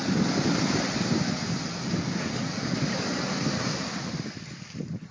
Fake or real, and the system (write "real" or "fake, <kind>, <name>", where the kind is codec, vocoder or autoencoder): real